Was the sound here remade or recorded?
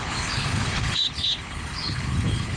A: remade